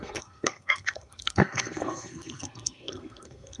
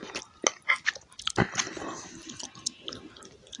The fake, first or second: first